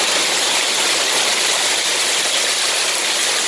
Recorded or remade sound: recorded